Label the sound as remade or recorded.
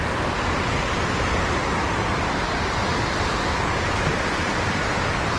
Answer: recorded